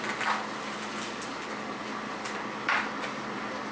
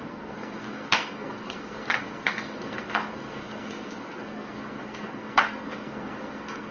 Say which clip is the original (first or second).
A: first